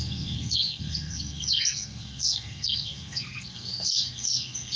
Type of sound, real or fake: fake